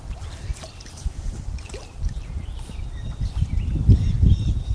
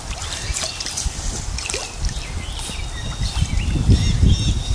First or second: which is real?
second